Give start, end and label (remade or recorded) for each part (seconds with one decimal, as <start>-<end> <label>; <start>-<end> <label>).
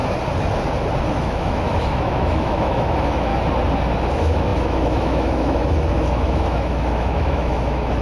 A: 0.0-1.2 recorded; 1.2-3.3 remade; 3.3-4.1 recorded; 4.1-8.0 remade